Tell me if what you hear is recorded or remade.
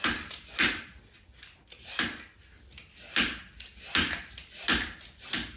recorded